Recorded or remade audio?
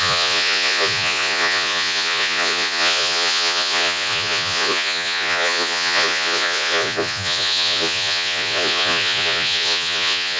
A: remade